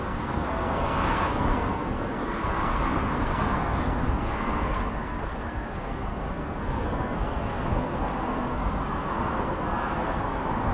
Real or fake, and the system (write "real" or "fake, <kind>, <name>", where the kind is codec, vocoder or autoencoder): fake, codec, SNAC